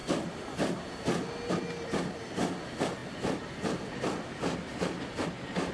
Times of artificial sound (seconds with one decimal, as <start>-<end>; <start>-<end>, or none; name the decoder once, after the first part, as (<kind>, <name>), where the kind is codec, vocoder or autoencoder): none